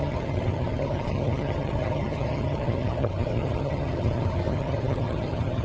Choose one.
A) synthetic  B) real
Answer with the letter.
A